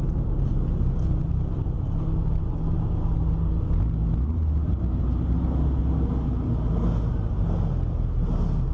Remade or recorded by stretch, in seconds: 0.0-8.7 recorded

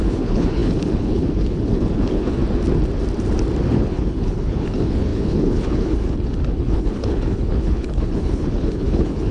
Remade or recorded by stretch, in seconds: 0.0-2.4 remade; 2.4-3.7 recorded; 3.7-9.3 remade

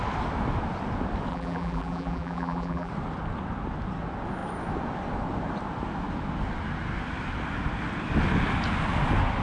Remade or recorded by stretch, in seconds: 0.0-1.3 recorded; 1.3-2.9 remade; 2.9-9.4 recorded

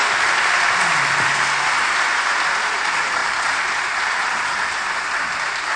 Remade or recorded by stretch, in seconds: 0.0-5.8 recorded

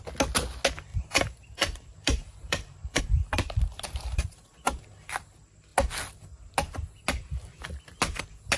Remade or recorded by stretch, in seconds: 0.0-0.9 recorded; 0.9-3.0 remade; 3.0-3.7 recorded; 3.7-4.8 remade; 4.8-8.6 recorded

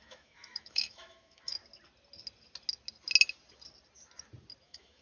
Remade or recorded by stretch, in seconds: 0.0-1.6 remade; 1.6-4.6 recorded; 4.6-5.0 remade